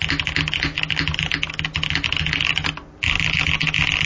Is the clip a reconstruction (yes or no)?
no